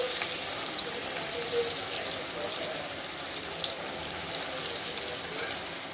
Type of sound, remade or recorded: recorded